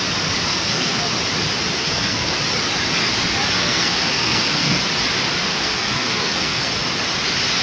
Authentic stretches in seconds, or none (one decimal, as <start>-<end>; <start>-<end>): 0.0-0.5; 1.0-1.8; 2.4-3.6; 4.8-5.5; 6.7-7.6